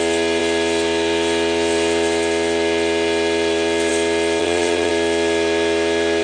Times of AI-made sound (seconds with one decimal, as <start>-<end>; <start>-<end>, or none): 4.4-4.9